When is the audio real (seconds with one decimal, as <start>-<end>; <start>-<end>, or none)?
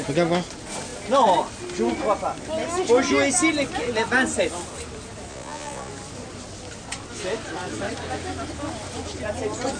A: 0.0-5.3; 5.9-9.8